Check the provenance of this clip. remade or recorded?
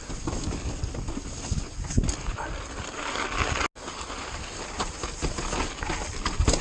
recorded